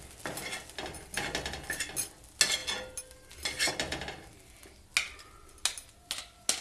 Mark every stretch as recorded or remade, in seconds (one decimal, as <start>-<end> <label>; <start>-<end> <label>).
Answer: 0.0-6.6 recorded

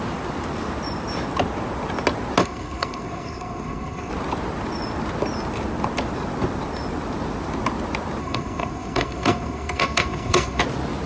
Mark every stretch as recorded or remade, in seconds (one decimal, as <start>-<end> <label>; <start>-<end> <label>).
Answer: 0.0-2.4 recorded; 2.4-4.1 remade; 4.1-8.2 recorded; 8.2-10.6 remade; 10.6-11.1 recorded

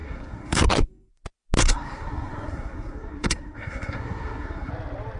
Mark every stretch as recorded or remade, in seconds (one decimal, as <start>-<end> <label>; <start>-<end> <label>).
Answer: 0.0-1.1 remade; 1.1-1.6 recorded; 1.6-4.7 remade; 4.7-5.2 recorded

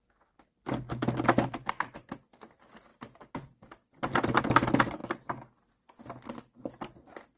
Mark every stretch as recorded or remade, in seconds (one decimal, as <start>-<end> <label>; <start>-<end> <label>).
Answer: 0.0-7.4 recorded